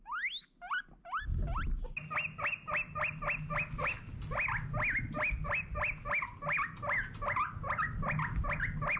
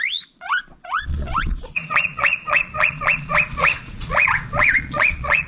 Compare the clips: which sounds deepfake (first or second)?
second